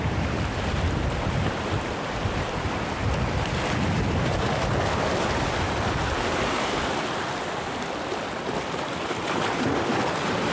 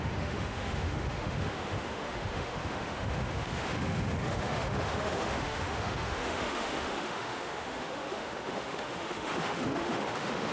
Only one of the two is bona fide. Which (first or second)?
first